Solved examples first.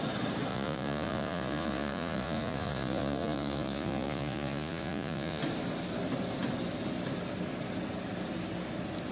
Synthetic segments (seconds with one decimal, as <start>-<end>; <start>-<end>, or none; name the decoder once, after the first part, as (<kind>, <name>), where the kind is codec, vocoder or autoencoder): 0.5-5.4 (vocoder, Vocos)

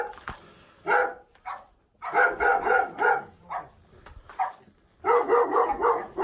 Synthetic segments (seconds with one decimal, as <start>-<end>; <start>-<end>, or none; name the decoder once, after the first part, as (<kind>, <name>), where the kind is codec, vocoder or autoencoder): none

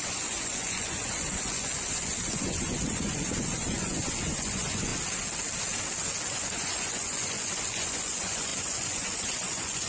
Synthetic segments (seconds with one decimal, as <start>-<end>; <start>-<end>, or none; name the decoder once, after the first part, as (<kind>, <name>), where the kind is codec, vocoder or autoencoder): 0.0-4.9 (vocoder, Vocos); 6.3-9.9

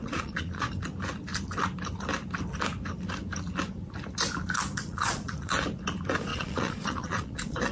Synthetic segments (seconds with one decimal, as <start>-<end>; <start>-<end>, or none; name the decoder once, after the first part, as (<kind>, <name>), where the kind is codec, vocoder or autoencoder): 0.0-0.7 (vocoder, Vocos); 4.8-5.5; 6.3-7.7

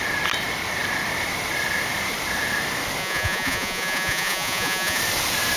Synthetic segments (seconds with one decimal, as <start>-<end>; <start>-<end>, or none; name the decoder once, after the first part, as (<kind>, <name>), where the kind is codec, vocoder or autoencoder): 3.0-5.0 (vocoder, Vocos)